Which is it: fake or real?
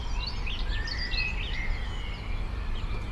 real